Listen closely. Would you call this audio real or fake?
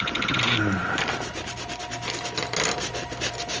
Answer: real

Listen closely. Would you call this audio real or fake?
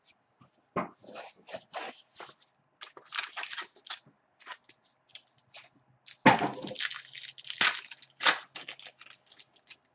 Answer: real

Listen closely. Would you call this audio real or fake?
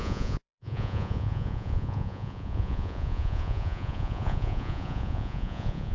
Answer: fake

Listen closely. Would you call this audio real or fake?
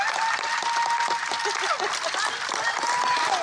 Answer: real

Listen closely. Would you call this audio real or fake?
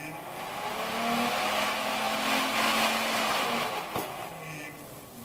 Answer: real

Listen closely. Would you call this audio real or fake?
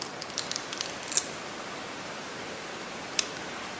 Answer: real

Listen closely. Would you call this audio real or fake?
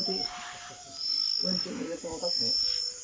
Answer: real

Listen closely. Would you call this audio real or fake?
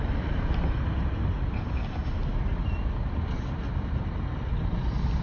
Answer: real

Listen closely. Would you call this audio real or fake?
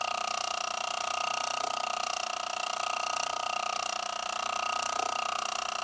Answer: real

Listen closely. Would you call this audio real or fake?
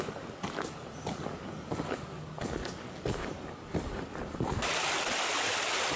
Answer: real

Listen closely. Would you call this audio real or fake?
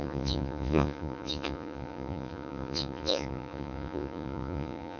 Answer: fake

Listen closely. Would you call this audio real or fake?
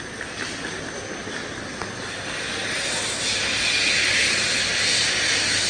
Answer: real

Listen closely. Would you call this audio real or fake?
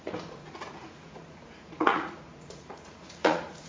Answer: fake